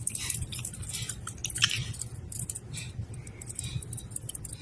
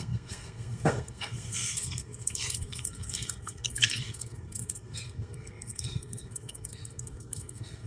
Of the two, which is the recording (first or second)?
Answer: first